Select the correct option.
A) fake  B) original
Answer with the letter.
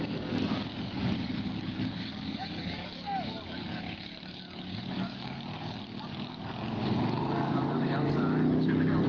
A